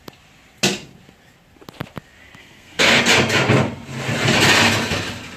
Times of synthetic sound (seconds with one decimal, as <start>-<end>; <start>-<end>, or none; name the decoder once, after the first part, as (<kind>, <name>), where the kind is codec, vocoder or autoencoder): 2.4-3.0 (codec, SNAC)